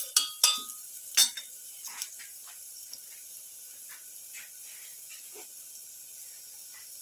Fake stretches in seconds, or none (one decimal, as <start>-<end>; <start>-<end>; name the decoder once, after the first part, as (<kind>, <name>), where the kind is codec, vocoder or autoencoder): 1.2-2.9 (vocoder, BigVGAN v2)